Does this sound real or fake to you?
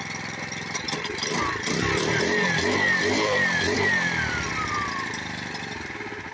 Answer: fake